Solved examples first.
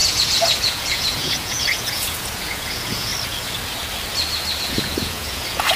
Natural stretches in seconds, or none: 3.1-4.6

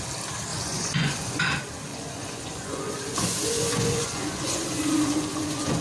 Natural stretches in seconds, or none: 0.0-0.5; 1.4-1.9

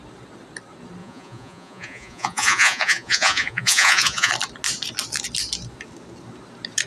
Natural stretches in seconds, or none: 0.0-1.0; 4.3-6.9

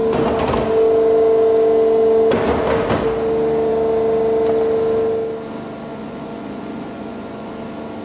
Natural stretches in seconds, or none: 0.0-5.9; 7.5-8.0

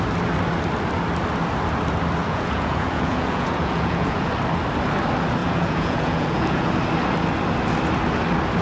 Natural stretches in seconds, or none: 0.0-2.2; 4.3-5.4; 6.7-8.6

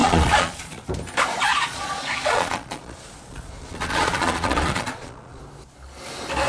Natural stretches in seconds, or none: 0.9-1.5; 5.4-6.5

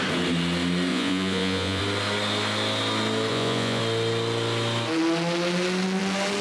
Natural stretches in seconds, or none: 0.0-0.9; 1.8-3.3; 3.8-6.4

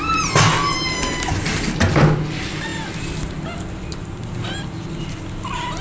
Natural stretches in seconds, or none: 0.0-5.8